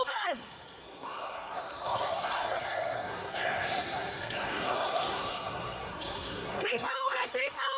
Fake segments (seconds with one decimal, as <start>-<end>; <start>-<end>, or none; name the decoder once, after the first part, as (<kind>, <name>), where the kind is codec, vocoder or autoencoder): 0.0-7.8 (codec, SNAC)